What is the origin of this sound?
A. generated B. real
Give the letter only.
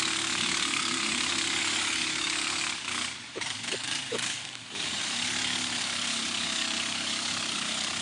A